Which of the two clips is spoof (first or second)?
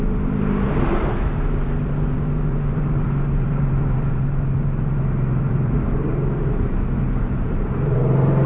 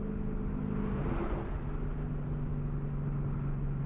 first